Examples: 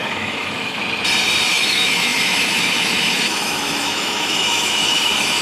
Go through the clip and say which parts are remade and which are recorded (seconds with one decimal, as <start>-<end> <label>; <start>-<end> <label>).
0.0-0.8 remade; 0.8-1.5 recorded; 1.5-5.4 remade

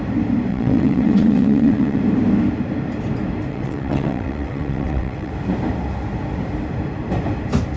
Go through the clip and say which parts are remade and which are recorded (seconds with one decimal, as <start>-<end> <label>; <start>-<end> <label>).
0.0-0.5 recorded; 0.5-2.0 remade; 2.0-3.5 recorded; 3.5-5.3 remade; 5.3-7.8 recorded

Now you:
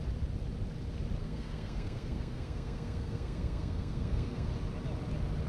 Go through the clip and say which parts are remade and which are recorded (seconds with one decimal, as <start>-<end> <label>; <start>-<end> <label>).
0.0-1.2 recorded; 1.2-4.5 remade; 4.5-5.5 recorded

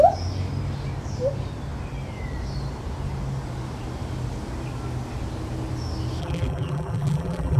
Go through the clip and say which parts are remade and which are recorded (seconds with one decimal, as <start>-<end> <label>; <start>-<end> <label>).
0.0-6.2 recorded; 6.2-7.6 remade

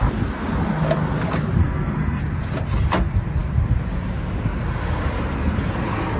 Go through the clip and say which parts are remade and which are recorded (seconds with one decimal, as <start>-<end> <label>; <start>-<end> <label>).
0.0-1.6 recorded; 1.6-2.2 remade; 2.2-6.2 recorded

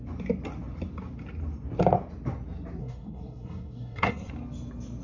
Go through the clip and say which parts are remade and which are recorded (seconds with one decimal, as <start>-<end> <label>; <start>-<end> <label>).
0.0-2.8 recorded; 2.8-4.3 remade; 4.3-5.0 recorded